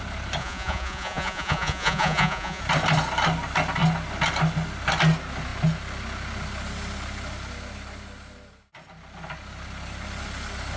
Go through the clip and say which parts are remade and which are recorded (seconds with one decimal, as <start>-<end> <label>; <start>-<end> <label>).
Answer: 0.0-0.4 recorded; 0.4-2.6 remade; 2.6-10.8 recorded

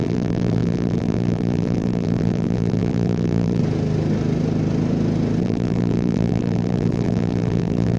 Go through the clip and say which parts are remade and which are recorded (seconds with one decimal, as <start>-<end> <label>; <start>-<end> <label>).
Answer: 0.0-3.6 remade; 3.6-5.4 recorded; 5.4-8.0 remade